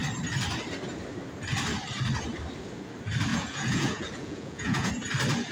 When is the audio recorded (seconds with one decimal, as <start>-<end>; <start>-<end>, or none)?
0.0-3.3; 4.9-5.5